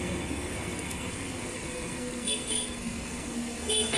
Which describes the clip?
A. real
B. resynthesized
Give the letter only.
B